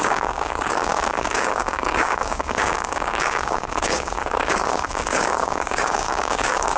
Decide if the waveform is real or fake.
fake